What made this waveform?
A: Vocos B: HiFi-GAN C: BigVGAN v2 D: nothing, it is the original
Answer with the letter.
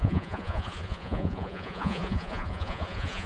A